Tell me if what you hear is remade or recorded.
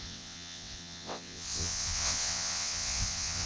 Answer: remade